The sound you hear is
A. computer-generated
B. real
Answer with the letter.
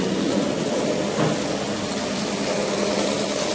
B